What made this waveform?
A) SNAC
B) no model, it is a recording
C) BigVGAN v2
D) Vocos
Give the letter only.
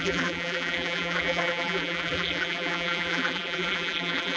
C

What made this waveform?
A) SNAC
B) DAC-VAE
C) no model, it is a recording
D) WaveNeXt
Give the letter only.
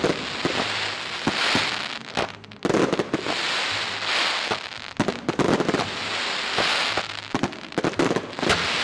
C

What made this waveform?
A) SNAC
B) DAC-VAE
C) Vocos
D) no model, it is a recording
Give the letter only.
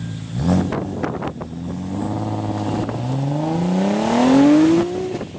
D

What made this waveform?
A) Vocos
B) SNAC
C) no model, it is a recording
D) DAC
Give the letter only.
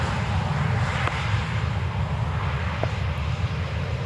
C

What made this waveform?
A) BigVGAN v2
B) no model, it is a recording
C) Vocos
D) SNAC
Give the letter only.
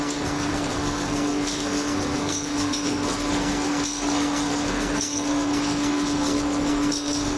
D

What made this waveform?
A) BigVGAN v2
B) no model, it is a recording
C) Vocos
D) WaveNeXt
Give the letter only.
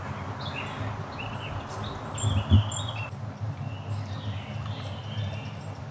B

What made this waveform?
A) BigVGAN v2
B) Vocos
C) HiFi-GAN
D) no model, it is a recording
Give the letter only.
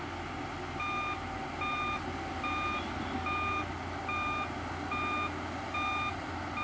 D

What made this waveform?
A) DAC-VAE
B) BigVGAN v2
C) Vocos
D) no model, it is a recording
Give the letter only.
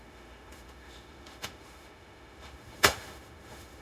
A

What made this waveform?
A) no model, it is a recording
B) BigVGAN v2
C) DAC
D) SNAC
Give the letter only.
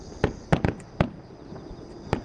A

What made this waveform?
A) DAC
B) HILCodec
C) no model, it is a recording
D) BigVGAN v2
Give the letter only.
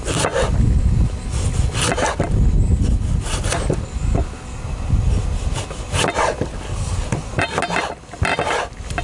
C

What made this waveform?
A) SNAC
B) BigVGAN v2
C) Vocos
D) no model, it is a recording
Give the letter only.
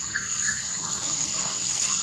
A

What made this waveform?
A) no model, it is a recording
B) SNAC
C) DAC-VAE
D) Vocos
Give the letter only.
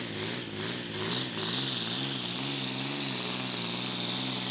A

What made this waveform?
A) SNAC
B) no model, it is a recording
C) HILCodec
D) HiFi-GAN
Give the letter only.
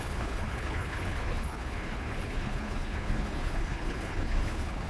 C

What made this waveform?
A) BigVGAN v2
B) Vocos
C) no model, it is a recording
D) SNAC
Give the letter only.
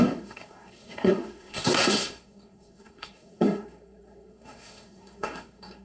D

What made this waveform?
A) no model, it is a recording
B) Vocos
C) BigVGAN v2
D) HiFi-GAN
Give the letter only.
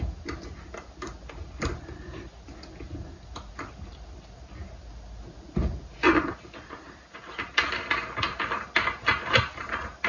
A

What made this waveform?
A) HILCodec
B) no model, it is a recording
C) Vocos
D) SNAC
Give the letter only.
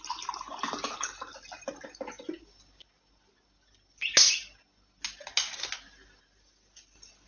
B